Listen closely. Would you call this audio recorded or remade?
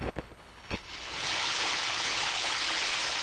remade